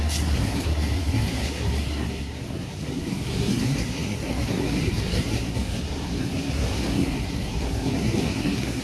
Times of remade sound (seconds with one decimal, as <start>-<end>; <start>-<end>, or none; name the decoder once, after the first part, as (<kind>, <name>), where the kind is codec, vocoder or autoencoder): 0.0-8.8 (codec, SNAC)